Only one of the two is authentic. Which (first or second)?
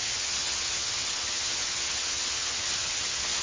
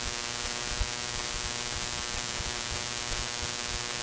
second